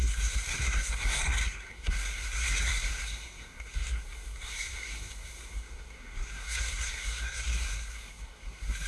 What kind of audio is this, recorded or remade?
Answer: remade